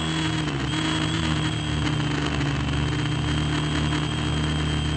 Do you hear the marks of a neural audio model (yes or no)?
no